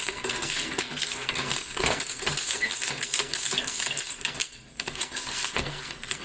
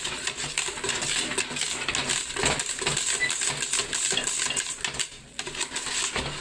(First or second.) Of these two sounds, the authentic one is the second